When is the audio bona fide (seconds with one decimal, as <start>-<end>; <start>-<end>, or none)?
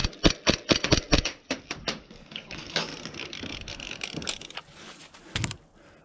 0.0-2.0; 2.9-6.0